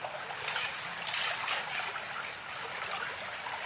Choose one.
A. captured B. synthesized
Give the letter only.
A